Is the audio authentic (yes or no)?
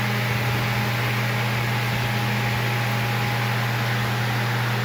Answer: yes